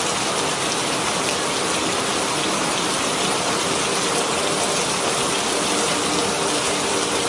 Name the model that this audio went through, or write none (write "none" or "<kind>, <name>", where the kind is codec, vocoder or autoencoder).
none